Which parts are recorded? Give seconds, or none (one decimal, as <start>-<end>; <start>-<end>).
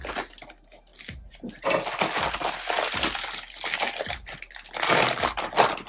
0.0-5.9